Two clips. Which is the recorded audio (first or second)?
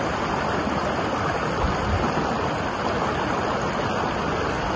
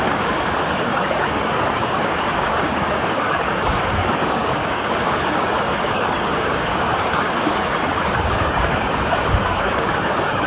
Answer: first